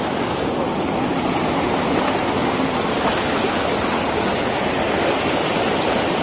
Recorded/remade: recorded